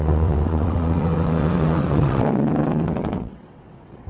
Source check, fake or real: fake